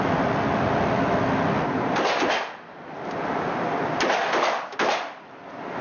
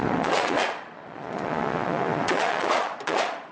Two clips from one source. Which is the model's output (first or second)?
second